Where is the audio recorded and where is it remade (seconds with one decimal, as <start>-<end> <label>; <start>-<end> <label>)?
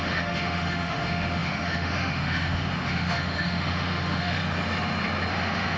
0.0-4.4 remade; 4.4-5.3 recorded; 5.3-5.8 remade